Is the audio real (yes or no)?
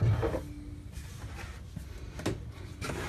yes